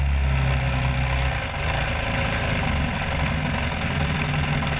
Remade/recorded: recorded